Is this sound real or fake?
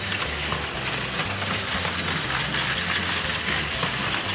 real